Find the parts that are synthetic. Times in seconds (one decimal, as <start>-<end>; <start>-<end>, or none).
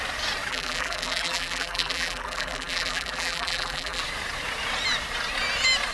0.5-4.0